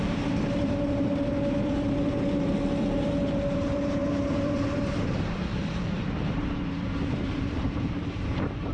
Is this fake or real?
fake